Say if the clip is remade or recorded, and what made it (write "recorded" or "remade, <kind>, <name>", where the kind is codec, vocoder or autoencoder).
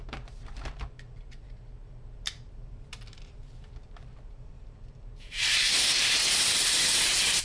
remade, vocoder, BigVGAN v2